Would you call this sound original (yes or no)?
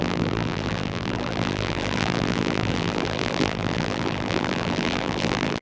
no